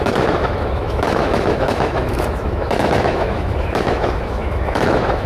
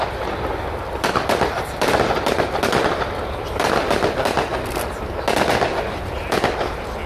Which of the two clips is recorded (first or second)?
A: second